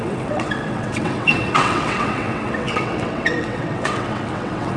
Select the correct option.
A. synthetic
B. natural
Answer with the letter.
A